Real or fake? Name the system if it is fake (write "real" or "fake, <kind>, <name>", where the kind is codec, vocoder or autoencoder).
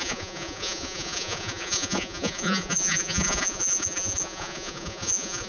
fake, vocoder, Vocos